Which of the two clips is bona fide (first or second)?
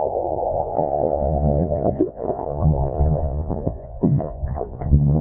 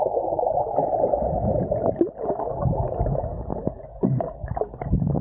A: second